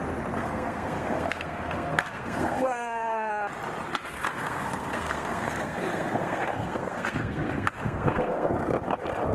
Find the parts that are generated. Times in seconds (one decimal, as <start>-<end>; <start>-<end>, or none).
0.4-3.3; 4.3-8.5